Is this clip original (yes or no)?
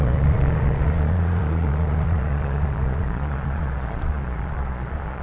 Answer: no